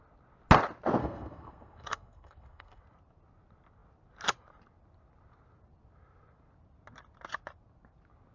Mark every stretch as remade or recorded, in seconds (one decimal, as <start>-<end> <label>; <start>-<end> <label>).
0.0-1.0 recorded; 1.0-2.8 remade; 2.8-8.3 recorded

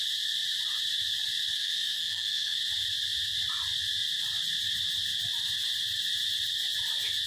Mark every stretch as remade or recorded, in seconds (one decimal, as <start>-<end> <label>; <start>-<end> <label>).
0.0-1.6 recorded; 1.6-2.6 remade; 2.6-7.3 recorded

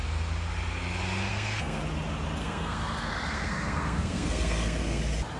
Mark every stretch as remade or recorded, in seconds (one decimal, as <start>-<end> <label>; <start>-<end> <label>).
0.0-1.3 recorded; 1.3-1.8 remade; 1.8-2.4 recorded; 2.4-5.0 remade; 5.0-5.4 recorded

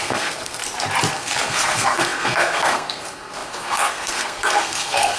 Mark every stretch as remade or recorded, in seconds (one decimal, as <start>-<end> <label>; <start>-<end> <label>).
0.0-0.6 remade; 0.6-1.1 recorded; 1.1-5.2 remade

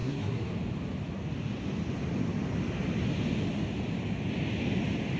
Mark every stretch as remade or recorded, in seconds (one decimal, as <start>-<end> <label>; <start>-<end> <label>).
0.0-0.5 remade; 0.5-5.2 recorded

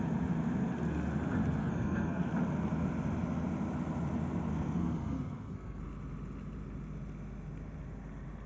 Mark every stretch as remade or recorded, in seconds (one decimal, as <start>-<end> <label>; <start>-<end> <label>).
0.0-1.6 recorded; 1.6-2.3 remade; 2.3-4.5 recorded; 4.5-5.8 remade; 5.8-8.5 recorded